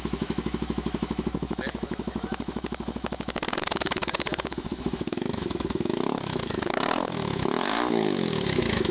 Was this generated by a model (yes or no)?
yes